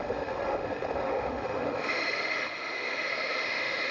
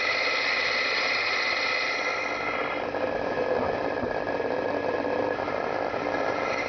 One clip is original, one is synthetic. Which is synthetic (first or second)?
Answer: first